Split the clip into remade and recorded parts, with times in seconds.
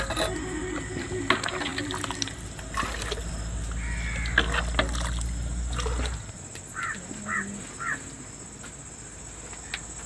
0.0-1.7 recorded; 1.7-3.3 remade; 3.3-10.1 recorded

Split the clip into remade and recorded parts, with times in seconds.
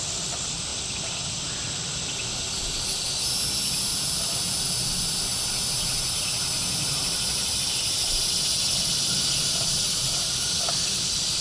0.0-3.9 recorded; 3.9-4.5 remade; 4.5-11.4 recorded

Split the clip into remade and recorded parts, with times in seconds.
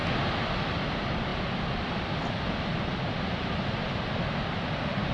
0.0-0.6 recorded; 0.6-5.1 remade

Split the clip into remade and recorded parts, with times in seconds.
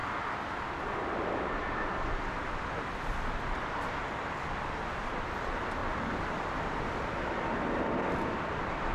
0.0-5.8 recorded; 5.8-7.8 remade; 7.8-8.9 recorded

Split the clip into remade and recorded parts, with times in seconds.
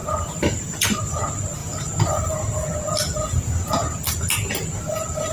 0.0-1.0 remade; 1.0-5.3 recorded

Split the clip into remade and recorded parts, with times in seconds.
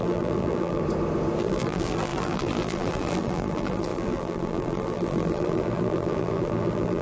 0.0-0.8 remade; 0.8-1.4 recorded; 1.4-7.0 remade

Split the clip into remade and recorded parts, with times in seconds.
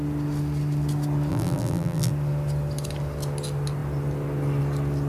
0.0-1.3 recorded; 1.3-2.1 remade; 2.1-5.1 recorded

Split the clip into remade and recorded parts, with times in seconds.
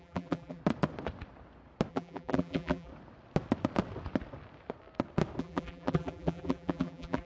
0.0-0.6 remade; 0.6-1.9 recorded; 1.9-2.9 remade; 2.9-5.4 recorded; 5.4-7.3 remade